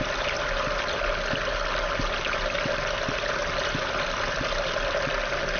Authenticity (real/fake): real